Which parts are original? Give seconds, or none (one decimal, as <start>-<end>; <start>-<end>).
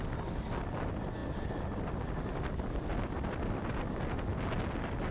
0.0-5.1